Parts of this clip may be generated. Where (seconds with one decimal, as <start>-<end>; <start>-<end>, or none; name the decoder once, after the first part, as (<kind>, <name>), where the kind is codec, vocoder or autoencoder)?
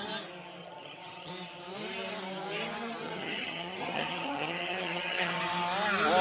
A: 0.6-1.3 (vocoder, HiFi-GAN); 3.0-5.4